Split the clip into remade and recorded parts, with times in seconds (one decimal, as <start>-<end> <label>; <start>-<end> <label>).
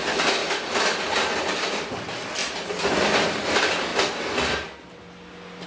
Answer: 0.0-0.4 recorded; 0.4-1.8 remade; 1.8-2.4 recorded; 2.4-3.0 remade; 3.0-5.7 recorded